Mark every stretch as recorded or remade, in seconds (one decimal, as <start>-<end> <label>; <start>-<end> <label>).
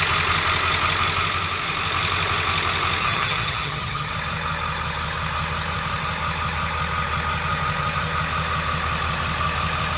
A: 0.0-3.0 recorded; 3.0-4.1 remade; 4.1-10.0 recorded